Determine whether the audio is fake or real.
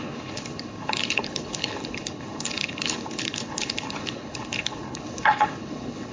fake